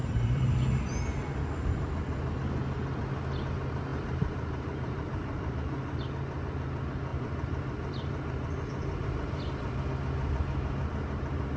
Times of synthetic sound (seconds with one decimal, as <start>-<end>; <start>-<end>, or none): 0.0-0.8; 3.9-6.0; 7.1-9.8